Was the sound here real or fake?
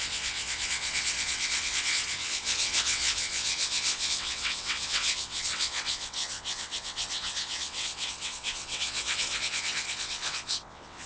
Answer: fake